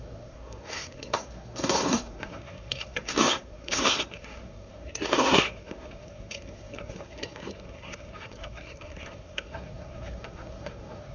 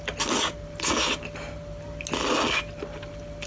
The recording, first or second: second